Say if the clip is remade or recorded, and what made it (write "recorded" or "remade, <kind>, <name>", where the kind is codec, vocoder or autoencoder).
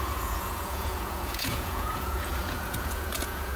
remade, vocoder, Vocos